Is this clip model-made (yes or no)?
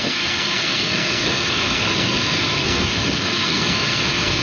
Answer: yes